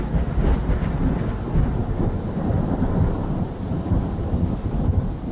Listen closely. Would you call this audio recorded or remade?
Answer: recorded